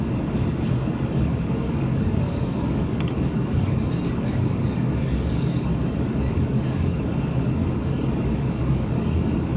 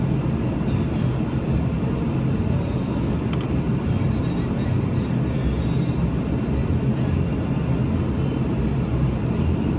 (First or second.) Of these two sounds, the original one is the second